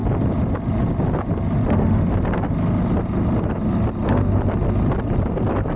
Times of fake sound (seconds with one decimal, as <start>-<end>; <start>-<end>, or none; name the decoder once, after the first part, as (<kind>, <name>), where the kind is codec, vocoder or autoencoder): none